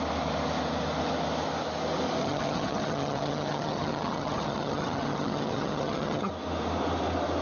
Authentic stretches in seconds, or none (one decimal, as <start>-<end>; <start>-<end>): 0.0-2.2; 6.3-7.4